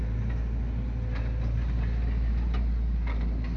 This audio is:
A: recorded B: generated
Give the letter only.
A